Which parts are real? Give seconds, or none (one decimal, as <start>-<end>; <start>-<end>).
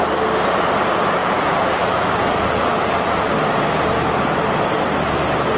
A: 0.0-1.2; 3.3-5.6